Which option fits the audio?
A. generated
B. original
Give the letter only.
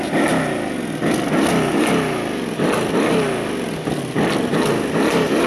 B